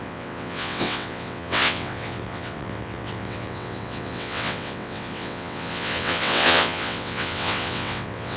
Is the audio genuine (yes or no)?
no